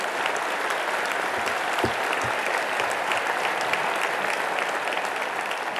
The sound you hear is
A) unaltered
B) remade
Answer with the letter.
A